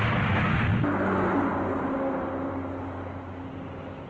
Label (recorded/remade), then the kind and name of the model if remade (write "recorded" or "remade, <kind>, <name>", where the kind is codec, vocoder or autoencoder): recorded